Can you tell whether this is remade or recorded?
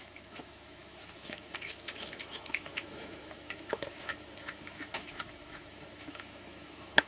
remade